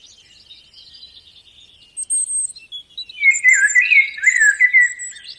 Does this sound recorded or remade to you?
recorded